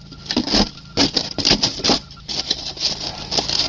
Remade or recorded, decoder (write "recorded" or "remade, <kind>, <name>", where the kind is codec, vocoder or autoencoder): recorded